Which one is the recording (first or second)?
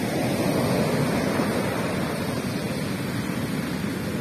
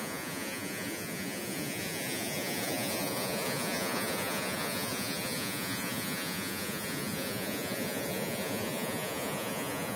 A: first